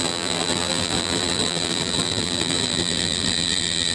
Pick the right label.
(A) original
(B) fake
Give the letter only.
B